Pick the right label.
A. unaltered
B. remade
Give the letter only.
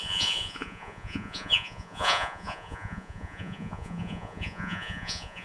B